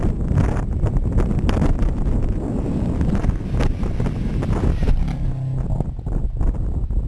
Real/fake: real